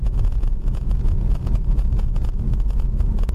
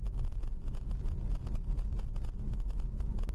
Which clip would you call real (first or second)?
second